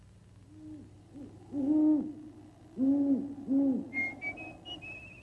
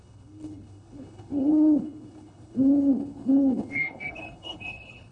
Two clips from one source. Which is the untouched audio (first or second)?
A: first